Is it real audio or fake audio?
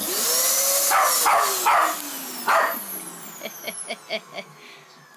real